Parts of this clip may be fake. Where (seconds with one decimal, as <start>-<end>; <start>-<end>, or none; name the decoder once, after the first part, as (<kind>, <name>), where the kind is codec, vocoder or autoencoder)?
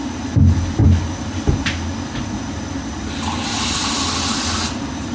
none